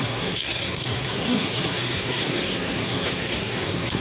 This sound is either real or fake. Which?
fake